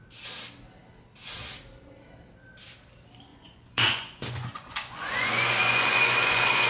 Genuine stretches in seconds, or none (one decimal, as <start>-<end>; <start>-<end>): 0.0-3.3